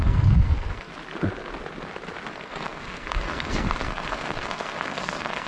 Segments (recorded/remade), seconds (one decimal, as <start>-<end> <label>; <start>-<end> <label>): 0.0-0.9 remade; 0.9-2.3 recorded; 2.3-5.5 remade